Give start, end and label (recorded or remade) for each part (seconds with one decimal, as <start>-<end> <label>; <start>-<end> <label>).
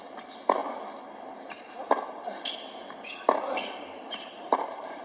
0.0-0.6 remade; 0.6-3.6 recorded; 3.6-5.0 remade